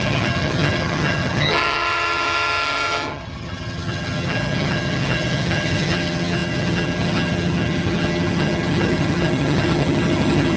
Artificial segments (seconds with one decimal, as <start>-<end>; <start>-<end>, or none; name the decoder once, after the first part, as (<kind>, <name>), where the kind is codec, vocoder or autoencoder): 0.0-10.6 (vocoder, HiFi-GAN)